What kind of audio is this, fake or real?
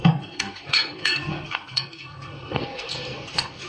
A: fake